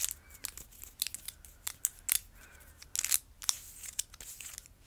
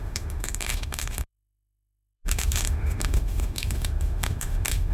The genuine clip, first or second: first